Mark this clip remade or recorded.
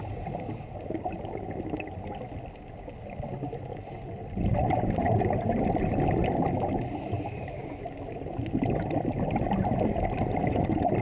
recorded